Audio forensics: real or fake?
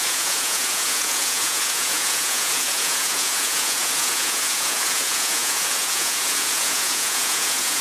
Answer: fake